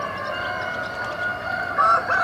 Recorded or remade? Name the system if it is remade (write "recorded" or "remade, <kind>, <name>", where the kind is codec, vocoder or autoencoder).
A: recorded